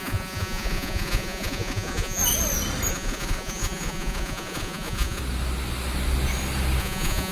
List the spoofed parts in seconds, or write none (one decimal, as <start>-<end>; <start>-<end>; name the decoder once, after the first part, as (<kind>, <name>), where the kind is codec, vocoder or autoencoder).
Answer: 0.0-2.2 (vocoder, Vocos); 2.9-5.2; 6.8-7.3